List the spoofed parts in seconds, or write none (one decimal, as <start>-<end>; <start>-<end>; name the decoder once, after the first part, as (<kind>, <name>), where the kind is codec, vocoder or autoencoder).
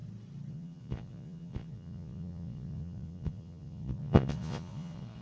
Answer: 0.5-5.2 (vocoder, Vocos)